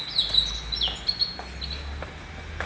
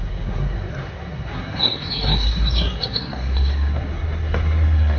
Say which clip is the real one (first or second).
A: first